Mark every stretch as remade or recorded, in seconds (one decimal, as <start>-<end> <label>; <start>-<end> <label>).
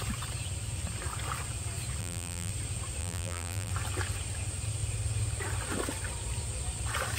0.0-2.0 recorded; 2.0-2.5 remade; 2.5-3.0 recorded; 3.0-3.7 remade; 3.7-7.2 recorded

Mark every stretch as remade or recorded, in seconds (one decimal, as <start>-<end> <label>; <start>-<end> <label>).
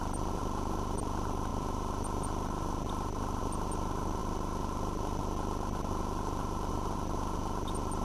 0.0-8.0 recorded